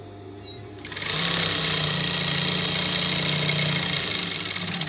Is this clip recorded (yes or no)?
yes